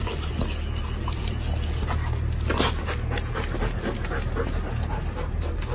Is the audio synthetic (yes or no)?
no